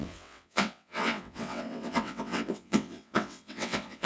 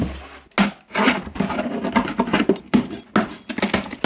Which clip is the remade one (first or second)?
first